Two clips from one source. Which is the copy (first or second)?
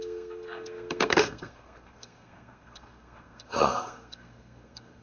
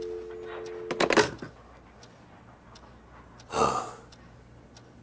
first